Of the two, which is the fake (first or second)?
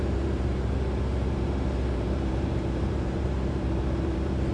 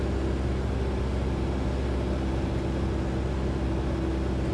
first